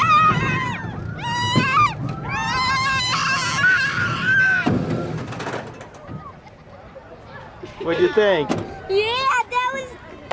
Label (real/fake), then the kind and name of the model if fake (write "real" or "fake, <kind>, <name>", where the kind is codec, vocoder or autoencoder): real